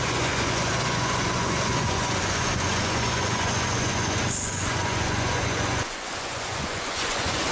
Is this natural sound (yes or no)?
no